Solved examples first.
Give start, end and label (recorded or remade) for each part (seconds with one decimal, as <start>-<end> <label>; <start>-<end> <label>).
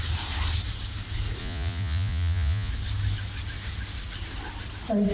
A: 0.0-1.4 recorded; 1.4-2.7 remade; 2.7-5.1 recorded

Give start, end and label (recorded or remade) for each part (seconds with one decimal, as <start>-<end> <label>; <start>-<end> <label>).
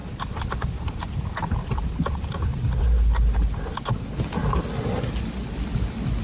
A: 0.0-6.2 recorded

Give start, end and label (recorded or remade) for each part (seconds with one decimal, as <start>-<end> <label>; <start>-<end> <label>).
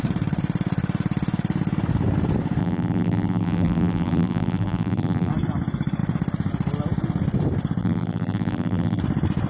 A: 0.0-2.6 recorded; 2.6-5.3 remade; 5.3-7.8 recorded; 7.8-9.0 remade; 9.0-9.5 recorded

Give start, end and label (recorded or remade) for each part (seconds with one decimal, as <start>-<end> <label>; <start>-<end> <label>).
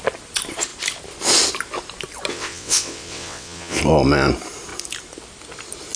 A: 0.0-2.3 recorded; 2.3-3.8 remade; 3.8-6.0 recorded